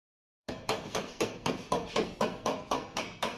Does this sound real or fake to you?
fake